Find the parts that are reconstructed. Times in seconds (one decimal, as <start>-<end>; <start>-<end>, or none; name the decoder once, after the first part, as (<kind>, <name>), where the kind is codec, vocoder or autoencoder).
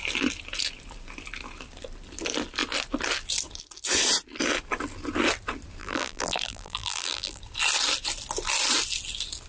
5.8-7.4 (vocoder, BigVGAN v2)